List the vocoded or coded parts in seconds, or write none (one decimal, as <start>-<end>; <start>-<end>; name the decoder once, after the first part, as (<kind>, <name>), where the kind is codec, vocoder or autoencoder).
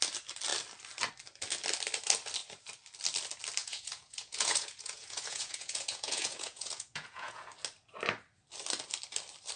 3.6-7.5 (vocoder, Vocos)